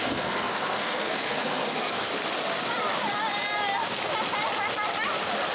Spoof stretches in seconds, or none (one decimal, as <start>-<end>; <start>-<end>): 0.0-2.1